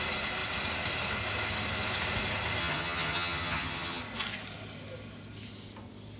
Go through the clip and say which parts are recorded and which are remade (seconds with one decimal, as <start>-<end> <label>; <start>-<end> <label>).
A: 0.0-2.6 recorded; 2.6-4.0 remade; 4.0-6.2 recorded